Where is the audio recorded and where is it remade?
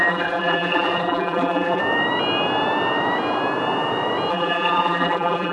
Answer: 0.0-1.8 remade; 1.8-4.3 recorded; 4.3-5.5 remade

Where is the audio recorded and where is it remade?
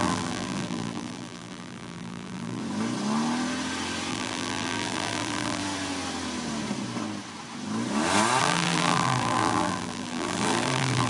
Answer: 0.0-2.6 remade; 2.6-4.1 recorded; 4.1-5.6 remade; 5.6-8.4 recorded; 8.4-11.1 remade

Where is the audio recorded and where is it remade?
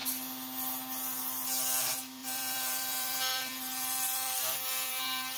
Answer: 0.0-2.2 recorded; 2.2-5.4 remade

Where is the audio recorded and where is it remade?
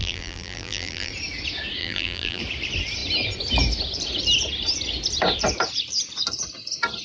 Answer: 0.0-1.1 remade; 1.1-1.8 recorded; 1.8-2.4 remade; 2.4-7.0 recorded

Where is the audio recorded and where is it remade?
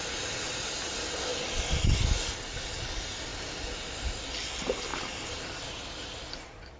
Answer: 0.0-1.3 recorded; 1.3-1.8 remade; 1.8-6.8 recorded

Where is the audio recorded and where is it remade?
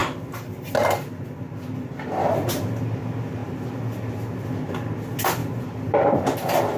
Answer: 0.0-5.4 recorded; 5.4-6.2 remade; 6.2-6.8 recorded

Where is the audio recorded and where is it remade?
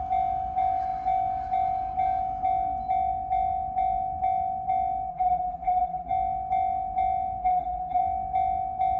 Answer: 0.0-5.1 recorded; 5.1-6.1 remade; 6.1-7.4 recorded; 7.4-8.0 remade; 8.0-9.0 recorded